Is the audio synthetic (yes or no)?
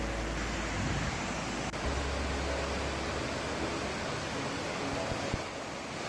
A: no